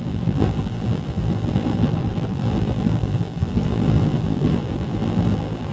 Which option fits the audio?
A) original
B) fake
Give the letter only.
B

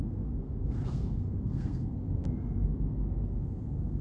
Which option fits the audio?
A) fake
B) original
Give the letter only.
A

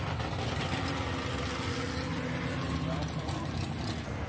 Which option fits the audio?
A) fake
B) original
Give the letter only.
B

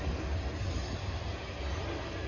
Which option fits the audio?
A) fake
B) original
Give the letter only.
B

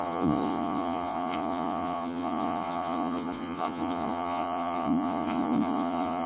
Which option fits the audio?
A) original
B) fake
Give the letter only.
B